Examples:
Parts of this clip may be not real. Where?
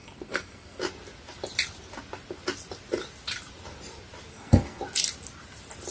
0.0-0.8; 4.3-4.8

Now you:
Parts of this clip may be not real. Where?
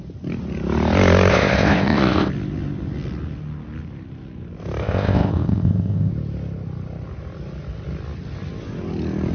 1.3-2.3; 4.8-6.1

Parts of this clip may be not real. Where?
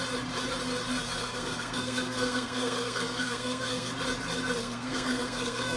1.2-3.9; 4.6-5.8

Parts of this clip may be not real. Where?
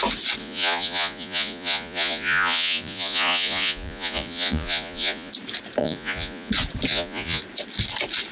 0.4-5.3; 5.8-6.5; 6.9-7.4